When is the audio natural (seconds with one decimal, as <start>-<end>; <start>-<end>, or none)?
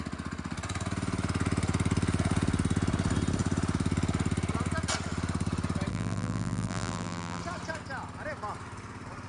0.0-5.9; 7.4-9.3